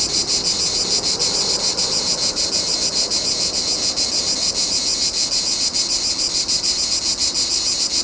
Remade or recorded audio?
recorded